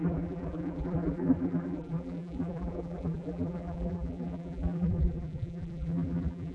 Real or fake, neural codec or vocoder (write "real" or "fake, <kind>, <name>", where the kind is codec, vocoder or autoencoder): fake, vocoder, BigVGAN v2